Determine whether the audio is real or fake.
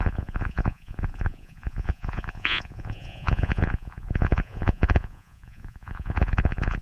fake